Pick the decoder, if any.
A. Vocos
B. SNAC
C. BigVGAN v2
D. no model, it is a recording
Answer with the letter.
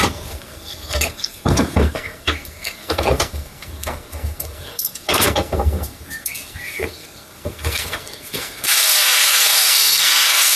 B